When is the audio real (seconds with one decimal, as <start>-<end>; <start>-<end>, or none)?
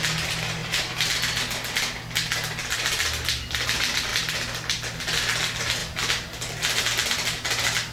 0.0-0.6; 1.1-7.9